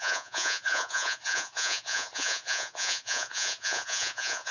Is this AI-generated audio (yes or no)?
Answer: yes